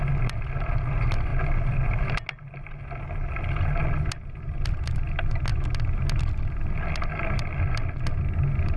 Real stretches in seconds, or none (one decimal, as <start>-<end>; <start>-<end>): 0.0-8.8